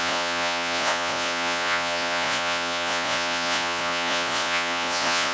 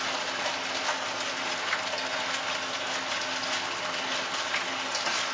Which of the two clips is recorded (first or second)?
second